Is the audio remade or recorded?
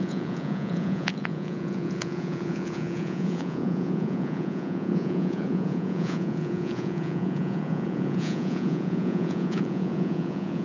remade